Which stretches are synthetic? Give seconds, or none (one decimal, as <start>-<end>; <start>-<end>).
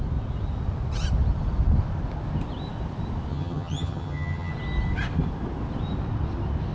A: 3.3-4.5